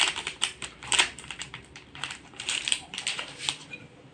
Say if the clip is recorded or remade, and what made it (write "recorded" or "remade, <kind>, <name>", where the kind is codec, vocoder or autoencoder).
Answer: remade, vocoder, BigVGAN v2